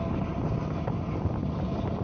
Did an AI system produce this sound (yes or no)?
no